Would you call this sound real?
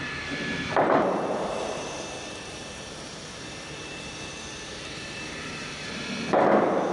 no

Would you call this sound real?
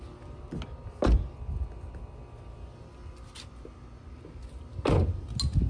yes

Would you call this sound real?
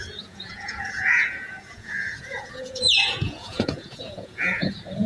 no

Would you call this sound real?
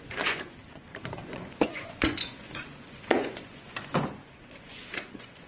no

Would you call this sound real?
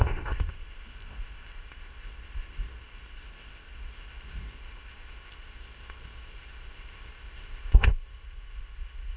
no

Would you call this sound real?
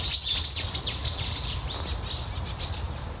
yes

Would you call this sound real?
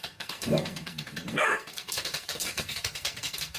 no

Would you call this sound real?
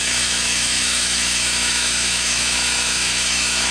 no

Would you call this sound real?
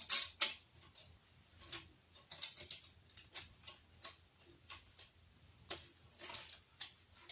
yes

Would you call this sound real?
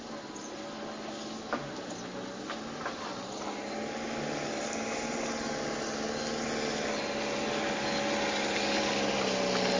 yes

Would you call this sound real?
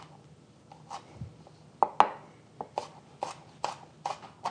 yes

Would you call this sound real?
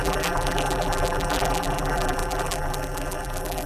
no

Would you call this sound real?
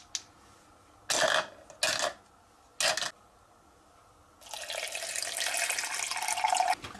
yes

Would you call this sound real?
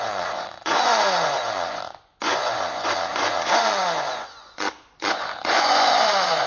no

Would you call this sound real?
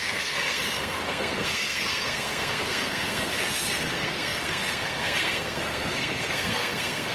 no